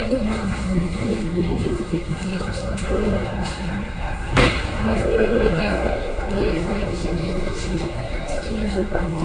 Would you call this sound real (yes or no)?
no